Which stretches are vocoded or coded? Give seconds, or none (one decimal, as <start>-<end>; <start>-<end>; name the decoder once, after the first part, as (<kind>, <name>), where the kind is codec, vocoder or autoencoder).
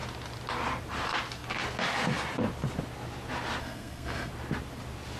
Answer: 3.6-4.3 (codec, SNAC)